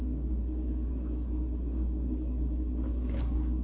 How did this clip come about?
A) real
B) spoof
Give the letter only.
B